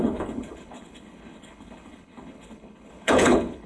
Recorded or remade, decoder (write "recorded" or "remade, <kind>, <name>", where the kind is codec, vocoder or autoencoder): remade, codec, HILCodec